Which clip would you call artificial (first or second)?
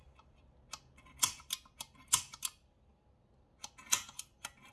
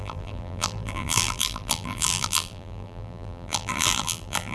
second